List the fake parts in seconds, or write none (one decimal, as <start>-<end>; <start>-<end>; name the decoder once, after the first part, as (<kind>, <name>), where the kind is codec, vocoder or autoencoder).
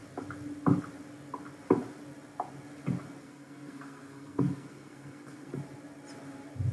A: 3.2-5.5 (codec, SNAC)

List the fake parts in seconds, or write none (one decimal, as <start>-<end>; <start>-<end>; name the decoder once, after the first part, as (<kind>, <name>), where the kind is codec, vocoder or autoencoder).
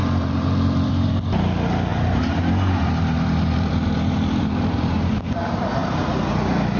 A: 0.0-1.1 (vocoder, BigVGAN v2); 1.9-4.9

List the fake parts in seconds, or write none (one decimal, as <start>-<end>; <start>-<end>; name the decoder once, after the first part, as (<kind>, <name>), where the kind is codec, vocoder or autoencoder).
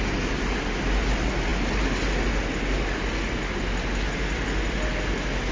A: none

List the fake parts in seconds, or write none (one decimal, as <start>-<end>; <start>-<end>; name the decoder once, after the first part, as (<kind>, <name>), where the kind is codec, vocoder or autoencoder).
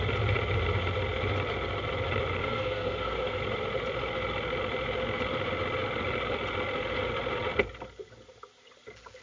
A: 2.4-3.4 (codec, SNAC)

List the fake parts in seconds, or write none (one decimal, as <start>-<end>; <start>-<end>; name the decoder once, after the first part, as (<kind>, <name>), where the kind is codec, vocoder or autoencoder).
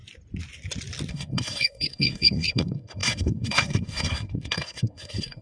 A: 1.1-5.4 (codec, SNAC)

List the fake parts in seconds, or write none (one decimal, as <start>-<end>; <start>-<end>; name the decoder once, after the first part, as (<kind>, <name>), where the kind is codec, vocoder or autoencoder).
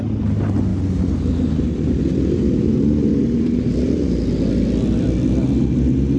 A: none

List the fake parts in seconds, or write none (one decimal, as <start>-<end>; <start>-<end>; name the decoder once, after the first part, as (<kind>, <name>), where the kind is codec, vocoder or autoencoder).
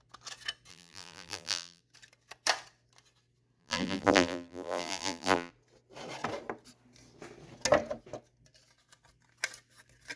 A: 0.7-1.8 (vocoder, BigVGAN v2); 3.6-5.5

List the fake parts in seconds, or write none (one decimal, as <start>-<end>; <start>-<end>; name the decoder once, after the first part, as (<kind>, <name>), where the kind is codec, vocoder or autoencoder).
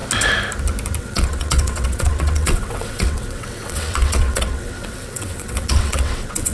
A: 1.0-6.5 (vocoder, WaveNeXt)